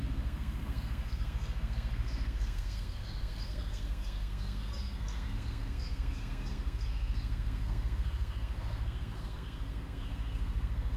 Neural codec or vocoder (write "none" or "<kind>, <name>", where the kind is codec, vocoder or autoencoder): codec, SNAC